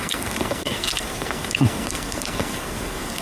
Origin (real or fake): fake